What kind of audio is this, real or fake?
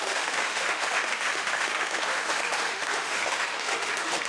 fake